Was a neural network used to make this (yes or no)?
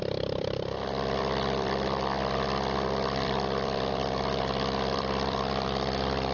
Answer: yes